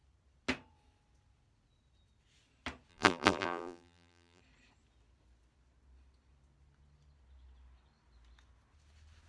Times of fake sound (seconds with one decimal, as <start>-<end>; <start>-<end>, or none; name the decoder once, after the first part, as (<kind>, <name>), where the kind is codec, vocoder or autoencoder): 2.9-4.4 (vocoder, BigVGAN v2)

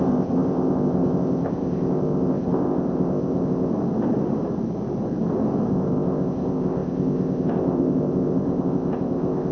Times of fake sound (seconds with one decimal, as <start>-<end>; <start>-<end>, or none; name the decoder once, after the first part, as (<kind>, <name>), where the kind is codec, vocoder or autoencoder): 0.0-3.7 (codec, ZipCodec); 5.7-9.5

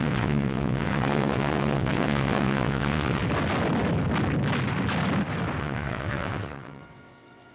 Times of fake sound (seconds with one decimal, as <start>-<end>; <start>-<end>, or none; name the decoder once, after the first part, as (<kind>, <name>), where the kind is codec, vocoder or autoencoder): 0.0-3.2 (vocoder, WaveNeXt); 5.6-7.5

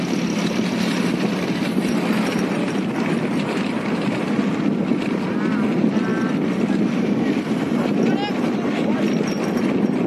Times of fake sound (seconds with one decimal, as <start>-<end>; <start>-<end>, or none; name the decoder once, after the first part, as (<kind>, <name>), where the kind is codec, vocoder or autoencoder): none

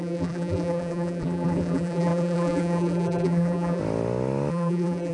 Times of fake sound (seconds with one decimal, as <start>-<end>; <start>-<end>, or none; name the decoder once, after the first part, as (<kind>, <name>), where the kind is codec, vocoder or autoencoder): 0.0-3.8 (vocoder, BigVGAN v2); 4.5-5.1